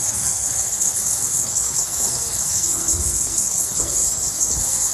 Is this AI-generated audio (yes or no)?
yes